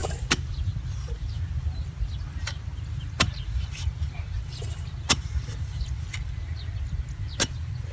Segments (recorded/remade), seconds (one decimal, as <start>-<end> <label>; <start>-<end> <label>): 0.0-7.9 recorded